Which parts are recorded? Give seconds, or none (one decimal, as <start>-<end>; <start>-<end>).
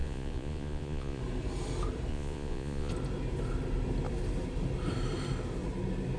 1.2-2.1; 2.9-6.2